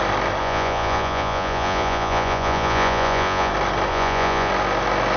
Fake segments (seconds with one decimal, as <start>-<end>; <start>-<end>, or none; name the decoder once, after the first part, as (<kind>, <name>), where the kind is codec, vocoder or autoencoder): 0.4-3.5 (vocoder, Vocos); 3.9-4.5